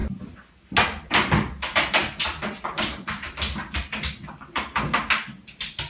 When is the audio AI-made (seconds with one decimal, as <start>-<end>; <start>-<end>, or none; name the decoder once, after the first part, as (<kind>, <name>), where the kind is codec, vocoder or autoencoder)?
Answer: none